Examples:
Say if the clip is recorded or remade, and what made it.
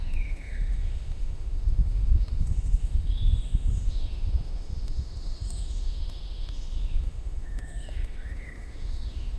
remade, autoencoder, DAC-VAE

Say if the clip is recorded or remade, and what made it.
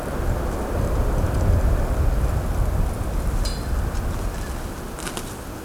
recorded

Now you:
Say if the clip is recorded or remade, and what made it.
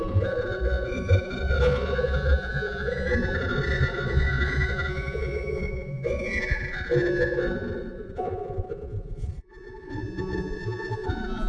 remade, vocoder, Vocos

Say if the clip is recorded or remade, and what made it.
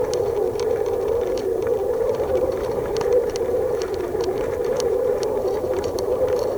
remade, vocoder, BigVGAN v2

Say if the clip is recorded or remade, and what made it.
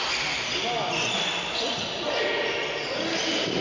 recorded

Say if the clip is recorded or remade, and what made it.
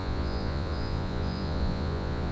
remade, vocoder, Vocos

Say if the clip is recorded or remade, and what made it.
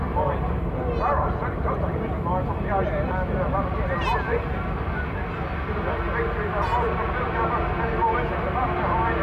recorded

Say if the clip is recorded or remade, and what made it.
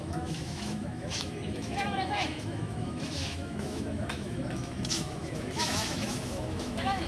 remade, autoencoder, DAC-VAE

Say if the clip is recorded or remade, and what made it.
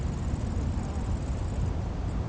recorded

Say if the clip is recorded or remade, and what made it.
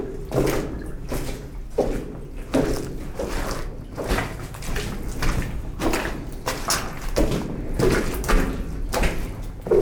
recorded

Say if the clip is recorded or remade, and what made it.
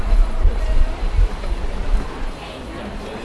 remade, vocoder, BigVGAN v2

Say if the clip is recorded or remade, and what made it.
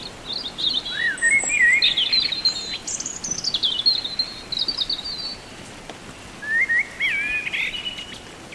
recorded